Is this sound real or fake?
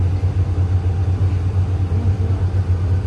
real